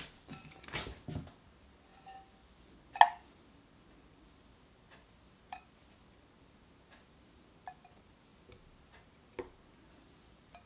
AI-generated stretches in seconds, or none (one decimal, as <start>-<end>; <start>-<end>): none